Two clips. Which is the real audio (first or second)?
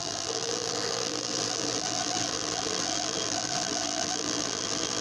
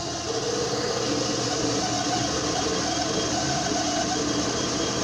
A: second